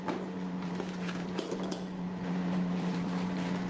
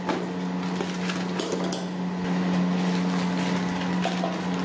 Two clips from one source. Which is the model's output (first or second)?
first